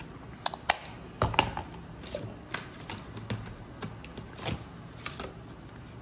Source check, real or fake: real